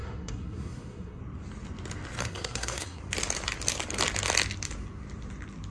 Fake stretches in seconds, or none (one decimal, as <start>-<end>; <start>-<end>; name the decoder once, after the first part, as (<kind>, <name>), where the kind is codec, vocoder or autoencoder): 0.0-1.2 (codec, SNAC); 2.2-3.0